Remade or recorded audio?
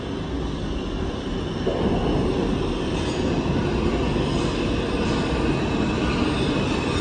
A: recorded